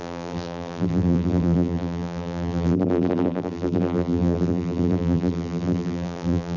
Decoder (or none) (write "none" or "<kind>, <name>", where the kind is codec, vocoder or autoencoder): vocoder, BigVGAN v2